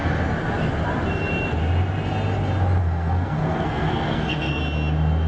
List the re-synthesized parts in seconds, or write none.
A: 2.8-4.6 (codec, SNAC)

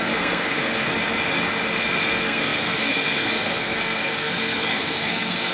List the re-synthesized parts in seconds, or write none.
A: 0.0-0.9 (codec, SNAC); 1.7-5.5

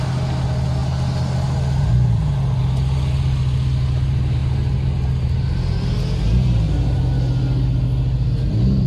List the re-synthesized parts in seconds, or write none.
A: none

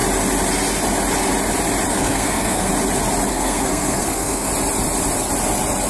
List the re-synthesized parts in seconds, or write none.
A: 1.9-2.7 (codec, SNAC); 3.3-4.5